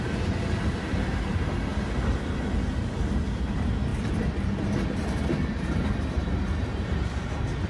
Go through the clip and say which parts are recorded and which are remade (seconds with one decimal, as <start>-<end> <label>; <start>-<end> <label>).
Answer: 0.0-7.7 recorded